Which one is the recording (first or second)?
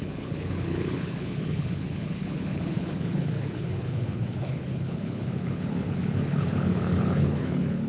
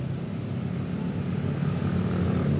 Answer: second